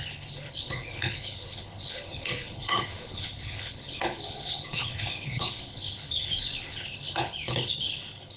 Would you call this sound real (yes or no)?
no